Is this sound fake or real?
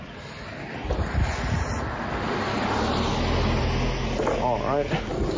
real